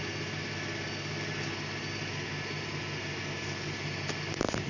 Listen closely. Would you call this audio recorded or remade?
recorded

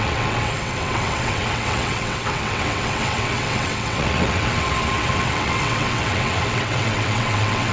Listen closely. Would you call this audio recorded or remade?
remade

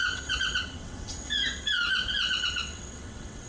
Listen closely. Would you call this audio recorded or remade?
remade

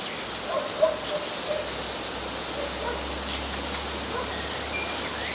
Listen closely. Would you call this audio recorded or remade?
recorded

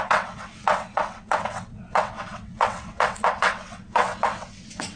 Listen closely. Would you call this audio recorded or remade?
remade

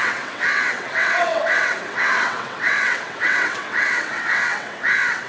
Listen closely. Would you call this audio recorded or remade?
remade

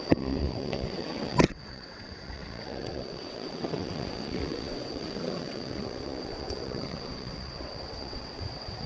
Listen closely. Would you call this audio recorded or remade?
remade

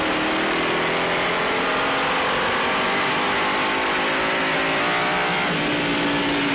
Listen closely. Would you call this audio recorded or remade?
recorded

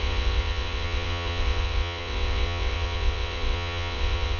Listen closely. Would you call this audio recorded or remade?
remade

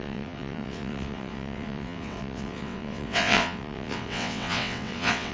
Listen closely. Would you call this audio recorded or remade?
remade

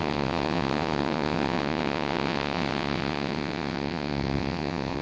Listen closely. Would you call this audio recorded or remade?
remade